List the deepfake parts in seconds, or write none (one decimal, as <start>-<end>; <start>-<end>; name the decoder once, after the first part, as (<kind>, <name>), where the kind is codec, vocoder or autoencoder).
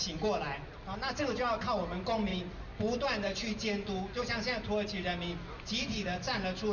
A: none